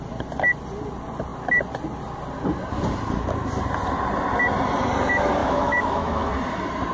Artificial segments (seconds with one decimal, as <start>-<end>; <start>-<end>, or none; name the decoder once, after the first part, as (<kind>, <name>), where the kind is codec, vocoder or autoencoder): 5.4-6.3 (autoencoder, DAC-VAE)